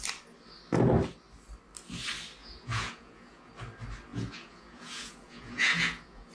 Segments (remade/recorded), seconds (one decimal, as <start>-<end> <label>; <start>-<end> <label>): 0.0-2.4 recorded; 2.4-3.5 remade; 3.5-4.1 recorded; 4.1-6.3 remade